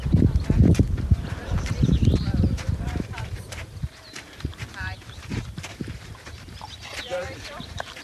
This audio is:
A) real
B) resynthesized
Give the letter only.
B